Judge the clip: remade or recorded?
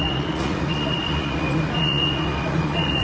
remade